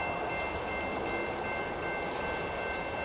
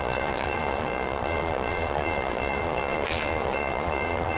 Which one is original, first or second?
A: first